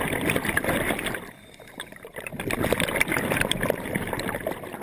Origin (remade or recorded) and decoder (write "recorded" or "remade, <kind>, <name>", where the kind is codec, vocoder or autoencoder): remade, vocoder, BigVGAN v2